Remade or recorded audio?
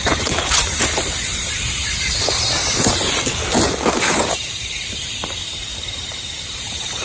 remade